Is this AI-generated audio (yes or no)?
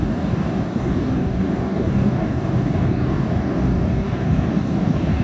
yes